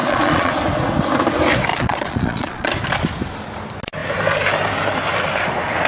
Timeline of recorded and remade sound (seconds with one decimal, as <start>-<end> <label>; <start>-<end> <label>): 0.0-0.5 remade; 0.5-1.7 recorded; 1.7-2.7 remade; 2.7-5.9 recorded